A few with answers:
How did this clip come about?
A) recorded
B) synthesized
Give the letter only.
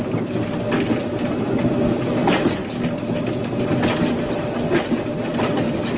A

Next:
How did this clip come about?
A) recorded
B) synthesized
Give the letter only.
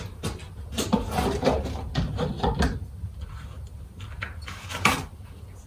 A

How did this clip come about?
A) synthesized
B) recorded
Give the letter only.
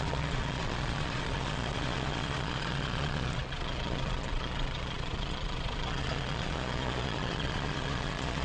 A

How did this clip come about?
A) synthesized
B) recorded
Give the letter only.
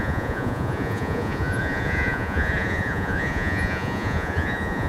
A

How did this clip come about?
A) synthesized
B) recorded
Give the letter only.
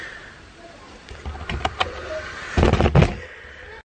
B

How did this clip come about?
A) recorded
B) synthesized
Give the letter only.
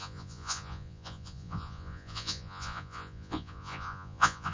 B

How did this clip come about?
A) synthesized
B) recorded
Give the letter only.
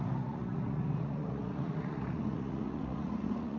A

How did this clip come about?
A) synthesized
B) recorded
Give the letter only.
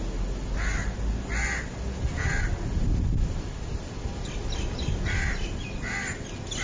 B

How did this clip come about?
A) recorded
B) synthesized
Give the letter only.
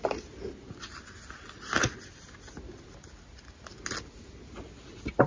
A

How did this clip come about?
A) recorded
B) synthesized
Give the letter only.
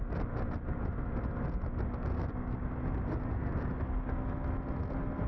A